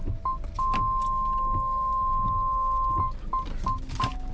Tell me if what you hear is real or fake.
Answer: real